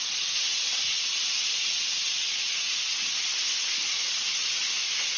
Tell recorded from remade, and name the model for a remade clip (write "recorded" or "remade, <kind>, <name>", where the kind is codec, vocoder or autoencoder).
recorded